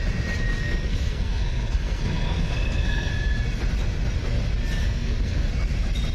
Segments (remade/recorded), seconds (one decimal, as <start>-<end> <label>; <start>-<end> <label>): 0.0-0.5 recorded; 0.5-3.1 remade; 3.1-4.8 recorded; 4.8-5.5 remade; 5.5-6.1 recorded